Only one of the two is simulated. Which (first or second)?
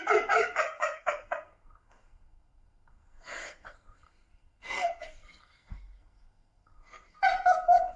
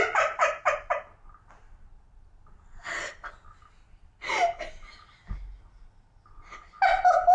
first